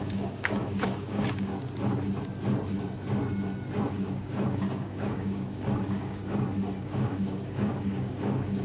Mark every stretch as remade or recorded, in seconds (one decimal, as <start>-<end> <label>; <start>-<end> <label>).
0.0-1.5 remade; 1.5-3.9 recorded; 3.9-6.2 remade; 6.2-6.8 recorded; 6.8-8.6 remade